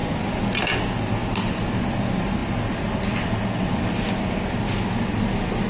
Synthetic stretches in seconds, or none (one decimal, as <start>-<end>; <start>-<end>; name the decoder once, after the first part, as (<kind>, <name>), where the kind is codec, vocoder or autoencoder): none